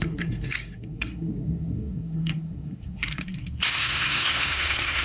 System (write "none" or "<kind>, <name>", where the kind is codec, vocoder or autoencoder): codec, SNAC